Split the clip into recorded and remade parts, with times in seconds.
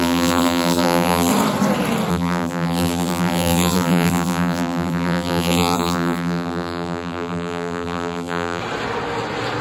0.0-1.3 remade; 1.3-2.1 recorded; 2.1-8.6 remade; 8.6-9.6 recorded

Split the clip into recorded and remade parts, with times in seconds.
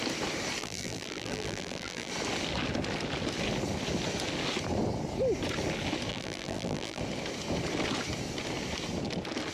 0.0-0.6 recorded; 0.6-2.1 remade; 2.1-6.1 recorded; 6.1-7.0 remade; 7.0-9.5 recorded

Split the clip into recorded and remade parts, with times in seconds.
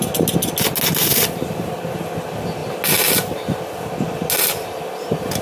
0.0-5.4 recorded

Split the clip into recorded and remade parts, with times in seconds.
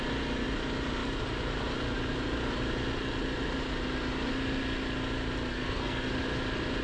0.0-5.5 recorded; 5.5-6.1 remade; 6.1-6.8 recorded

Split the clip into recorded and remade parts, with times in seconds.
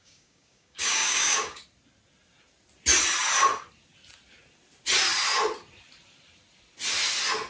0.0-1.6 remade; 1.6-7.5 recorded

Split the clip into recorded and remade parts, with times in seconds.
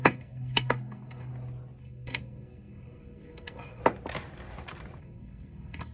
0.0-1.3 remade; 1.3-1.8 recorded; 1.8-3.8 remade; 3.8-5.0 recorded; 5.0-5.9 remade